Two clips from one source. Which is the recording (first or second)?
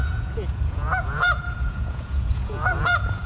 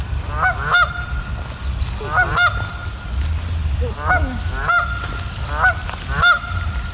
second